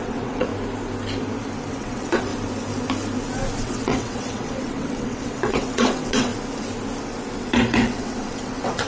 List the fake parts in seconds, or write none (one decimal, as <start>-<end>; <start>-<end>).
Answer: 0.0-0.5; 1.7-2.3; 3.6-6.3; 7.4-8.9